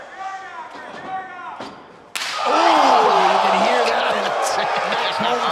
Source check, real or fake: real